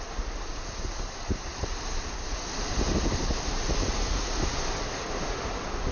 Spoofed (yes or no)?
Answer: no